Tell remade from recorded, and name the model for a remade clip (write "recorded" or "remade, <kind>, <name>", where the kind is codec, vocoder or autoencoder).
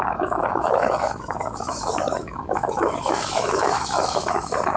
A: remade, autoencoder, DAC-VAE